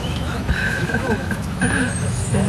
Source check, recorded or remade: remade